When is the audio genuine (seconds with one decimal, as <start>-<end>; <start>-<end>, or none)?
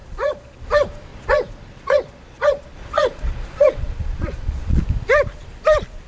0.7-1.1; 4.8-6.1